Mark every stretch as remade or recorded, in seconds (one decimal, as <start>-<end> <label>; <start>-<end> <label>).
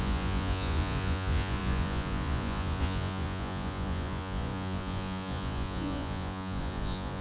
0.0-7.2 remade